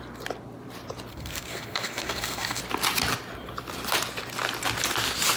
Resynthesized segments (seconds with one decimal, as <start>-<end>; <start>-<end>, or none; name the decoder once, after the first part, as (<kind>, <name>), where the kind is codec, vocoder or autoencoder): 1.1-2.6 (codec, SNAC)